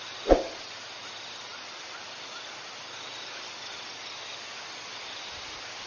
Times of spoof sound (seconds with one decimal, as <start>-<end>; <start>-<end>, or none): none